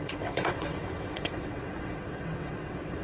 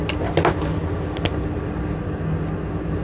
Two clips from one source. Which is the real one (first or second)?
second